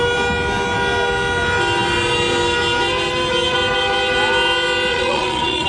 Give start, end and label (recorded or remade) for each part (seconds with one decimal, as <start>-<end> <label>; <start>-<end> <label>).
0.0-4.9 recorded; 4.9-5.7 remade